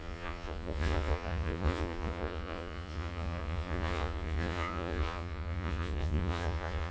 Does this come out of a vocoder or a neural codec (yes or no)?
yes